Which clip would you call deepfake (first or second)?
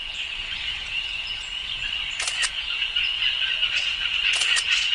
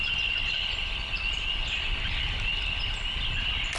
first